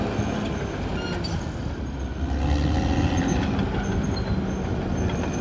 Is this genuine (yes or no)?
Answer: yes